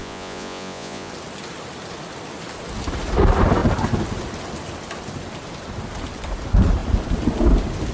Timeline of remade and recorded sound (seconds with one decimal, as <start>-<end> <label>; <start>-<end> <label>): 0.0-1.1 remade; 1.1-7.9 recorded